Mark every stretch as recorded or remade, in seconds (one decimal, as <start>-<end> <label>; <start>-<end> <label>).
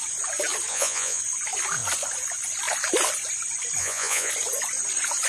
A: 0.0-0.7 recorded; 0.7-1.2 remade; 1.2-3.8 recorded; 3.8-4.3 remade; 4.3-5.3 recorded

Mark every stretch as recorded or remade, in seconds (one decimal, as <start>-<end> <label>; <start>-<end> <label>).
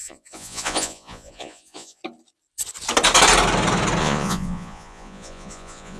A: 0.0-2.0 remade; 2.0-4.0 recorded; 4.0-6.0 remade